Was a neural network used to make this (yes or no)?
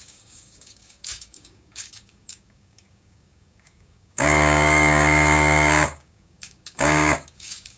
yes